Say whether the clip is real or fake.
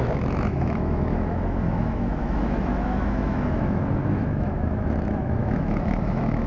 fake